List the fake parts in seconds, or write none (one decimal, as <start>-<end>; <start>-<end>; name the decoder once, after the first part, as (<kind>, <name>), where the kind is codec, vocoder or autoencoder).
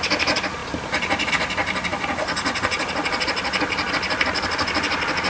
none